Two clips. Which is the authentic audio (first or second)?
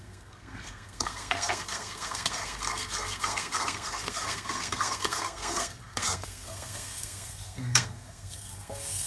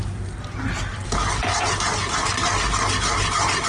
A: second